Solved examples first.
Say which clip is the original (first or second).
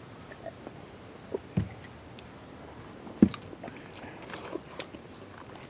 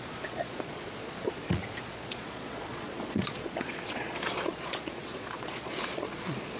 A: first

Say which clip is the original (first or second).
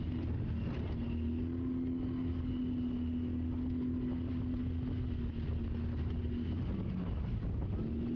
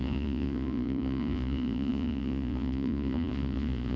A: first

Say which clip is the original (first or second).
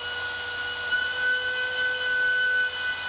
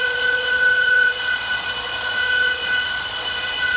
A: first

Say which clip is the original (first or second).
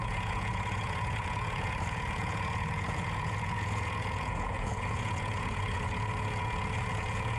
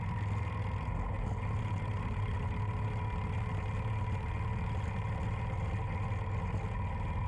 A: second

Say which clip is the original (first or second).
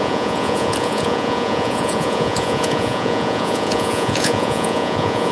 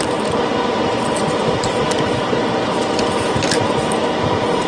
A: second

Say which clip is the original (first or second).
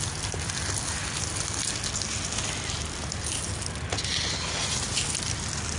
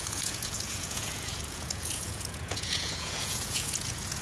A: first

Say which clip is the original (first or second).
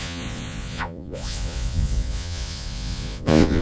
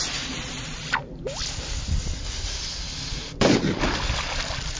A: second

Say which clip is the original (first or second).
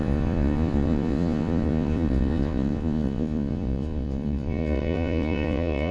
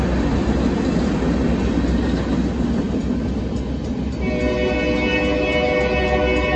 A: second